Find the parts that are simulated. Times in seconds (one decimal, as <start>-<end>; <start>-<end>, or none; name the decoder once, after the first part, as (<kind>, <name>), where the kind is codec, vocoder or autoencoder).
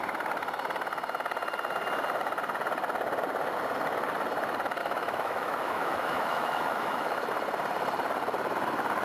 4.8-7.3 (autoencoder, DAC-VAE)